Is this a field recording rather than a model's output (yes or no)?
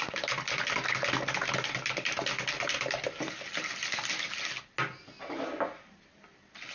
yes